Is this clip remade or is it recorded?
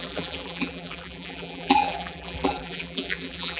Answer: remade